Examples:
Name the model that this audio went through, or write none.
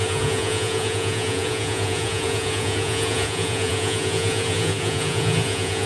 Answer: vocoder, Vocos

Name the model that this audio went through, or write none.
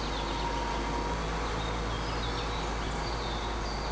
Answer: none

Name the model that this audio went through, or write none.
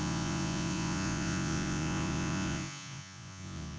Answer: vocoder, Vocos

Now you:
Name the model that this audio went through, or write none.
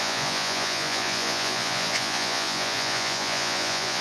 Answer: vocoder, Vocos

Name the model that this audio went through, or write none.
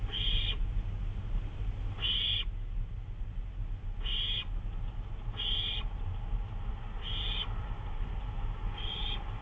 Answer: none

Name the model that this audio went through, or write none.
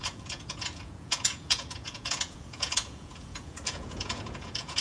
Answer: vocoder, Vocos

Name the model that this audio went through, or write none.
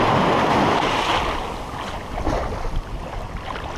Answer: none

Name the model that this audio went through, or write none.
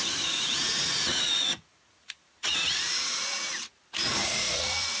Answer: vocoder, Vocos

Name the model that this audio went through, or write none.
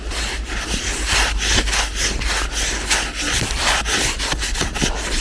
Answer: none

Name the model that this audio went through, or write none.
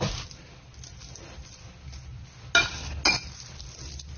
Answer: none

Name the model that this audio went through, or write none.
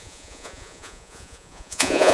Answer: vocoder, Vocos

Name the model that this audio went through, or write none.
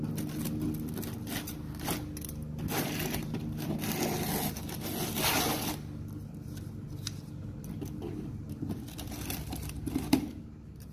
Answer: none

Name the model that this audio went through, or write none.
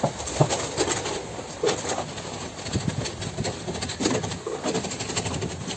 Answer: none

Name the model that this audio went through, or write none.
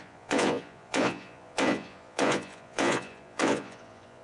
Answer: vocoder, Vocos